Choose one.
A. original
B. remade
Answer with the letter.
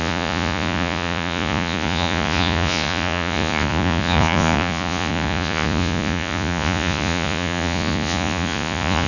B